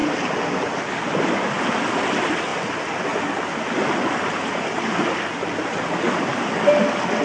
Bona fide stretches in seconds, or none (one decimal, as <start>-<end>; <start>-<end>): 0.0-7.2